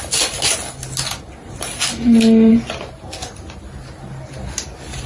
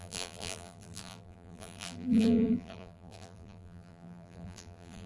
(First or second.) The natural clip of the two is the first